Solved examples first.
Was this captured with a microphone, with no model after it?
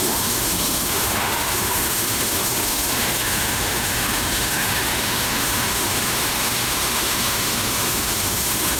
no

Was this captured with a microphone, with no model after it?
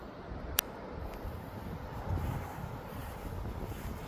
yes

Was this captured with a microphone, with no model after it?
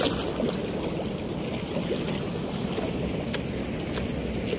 yes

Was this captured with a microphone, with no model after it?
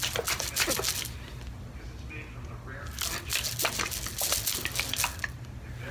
yes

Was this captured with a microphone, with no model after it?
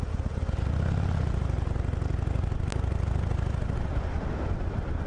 yes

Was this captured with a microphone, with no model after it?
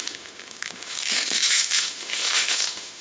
no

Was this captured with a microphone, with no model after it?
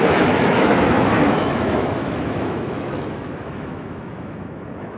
no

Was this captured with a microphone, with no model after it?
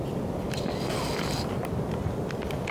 yes